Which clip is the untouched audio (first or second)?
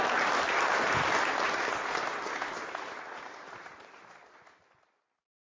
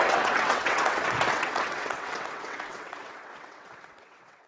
first